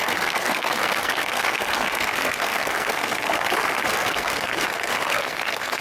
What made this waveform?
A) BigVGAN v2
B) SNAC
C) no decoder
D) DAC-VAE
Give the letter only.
B